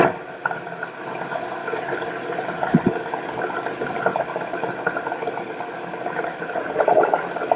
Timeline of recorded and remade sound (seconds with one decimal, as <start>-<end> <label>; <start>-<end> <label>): 0.0-1.6 recorded; 1.6-2.1 remade; 2.1-4.1 recorded; 4.1-6.6 remade; 6.6-7.6 recorded